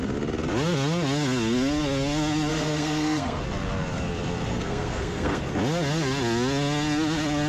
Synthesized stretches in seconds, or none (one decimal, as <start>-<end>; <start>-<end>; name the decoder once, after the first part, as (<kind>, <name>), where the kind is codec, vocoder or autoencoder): 2.5-3.4 (codec, SNAC); 4.5-5.5

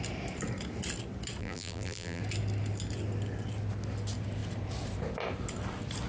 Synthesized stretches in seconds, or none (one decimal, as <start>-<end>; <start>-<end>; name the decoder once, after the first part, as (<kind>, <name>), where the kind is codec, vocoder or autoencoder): 1.4-2.2 (vocoder, BigVGAN v2)

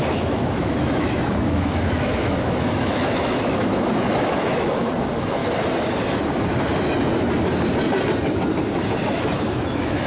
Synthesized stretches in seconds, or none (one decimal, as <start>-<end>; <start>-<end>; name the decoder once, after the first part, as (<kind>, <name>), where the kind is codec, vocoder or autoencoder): 0.0-5.4 (autoencoder, DAC-VAE); 9.1-10.1

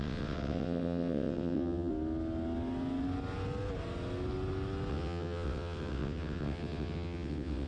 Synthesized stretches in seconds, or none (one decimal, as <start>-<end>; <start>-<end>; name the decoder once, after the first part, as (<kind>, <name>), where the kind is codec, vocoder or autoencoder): 0.0-1.9 (vocoder, WaveNeXt); 4.9-7.7

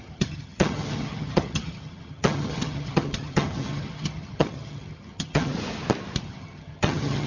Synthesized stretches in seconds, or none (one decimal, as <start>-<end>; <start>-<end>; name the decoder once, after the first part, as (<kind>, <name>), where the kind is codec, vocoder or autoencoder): 0.0-5.5 (vocoder, HiFi-GAN); 6.2-7.3

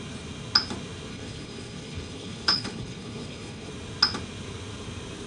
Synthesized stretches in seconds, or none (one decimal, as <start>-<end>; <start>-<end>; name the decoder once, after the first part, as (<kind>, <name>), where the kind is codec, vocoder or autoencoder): 1.1-3.7 (codec, HILCodec)